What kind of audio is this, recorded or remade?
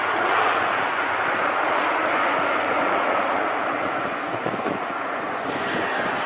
remade